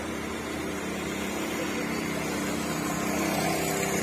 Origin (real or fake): real